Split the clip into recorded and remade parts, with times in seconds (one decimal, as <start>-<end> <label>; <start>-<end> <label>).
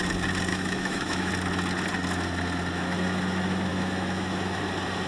0.0-0.5 recorded; 0.5-1.3 remade; 1.3-3.7 recorded; 3.7-4.6 remade; 4.6-5.1 recorded